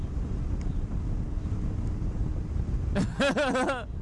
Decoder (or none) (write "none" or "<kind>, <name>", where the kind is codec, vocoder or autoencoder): none